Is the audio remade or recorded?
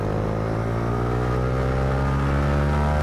recorded